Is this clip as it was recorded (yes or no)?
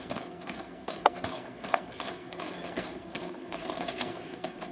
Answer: no